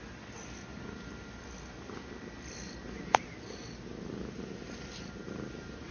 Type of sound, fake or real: real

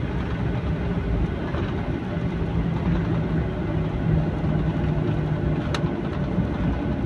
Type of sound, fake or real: real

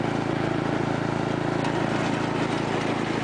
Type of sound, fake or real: real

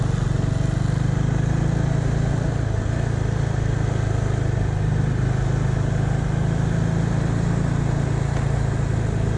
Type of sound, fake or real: real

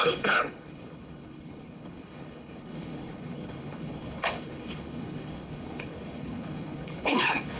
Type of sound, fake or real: fake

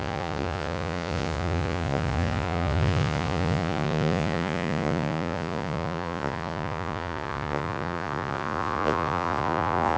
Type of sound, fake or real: fake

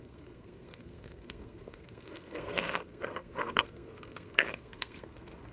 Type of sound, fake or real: fake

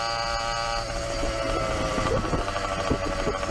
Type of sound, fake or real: real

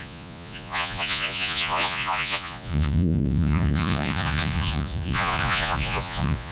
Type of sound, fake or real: fake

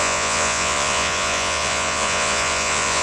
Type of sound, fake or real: fake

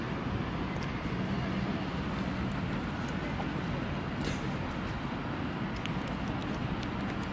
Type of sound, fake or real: real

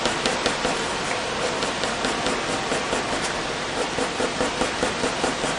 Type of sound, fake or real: real